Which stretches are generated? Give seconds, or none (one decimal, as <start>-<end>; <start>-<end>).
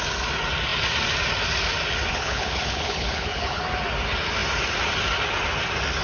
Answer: 2.1-3.6